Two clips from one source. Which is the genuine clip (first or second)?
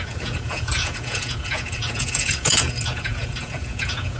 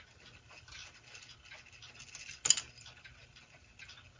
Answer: second